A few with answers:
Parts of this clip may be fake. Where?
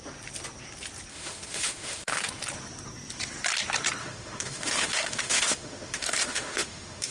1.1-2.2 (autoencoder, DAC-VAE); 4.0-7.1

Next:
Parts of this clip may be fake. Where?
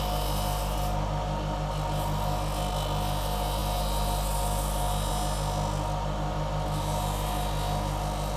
none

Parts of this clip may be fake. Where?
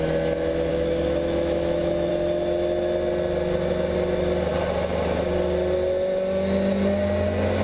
0.7-2.1 (autoencoder, DAC-VAE)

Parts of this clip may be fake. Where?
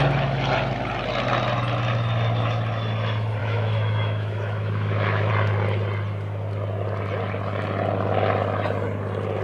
3.4-5.3 (autoencoder, DAC-VAE)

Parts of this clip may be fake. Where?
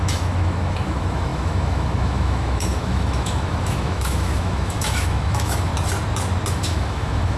0.0-5.7 (autoencoder, DAC-VAE); 6.5-7.4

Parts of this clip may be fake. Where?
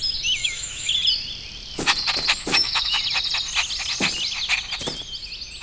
0.4-0.9 (autoencoder, DAC-VAE); 2.5-3.0